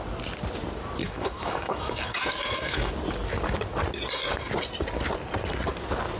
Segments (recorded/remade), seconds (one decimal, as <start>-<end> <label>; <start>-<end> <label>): 0.0-1.0 recorded; 1.0-2.9 remade; 2.9-6.2 recorded